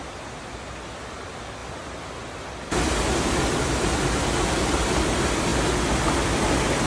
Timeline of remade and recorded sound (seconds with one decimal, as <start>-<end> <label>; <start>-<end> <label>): 0.0-6.9 recorded